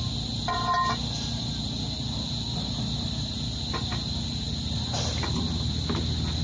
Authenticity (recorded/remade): recorded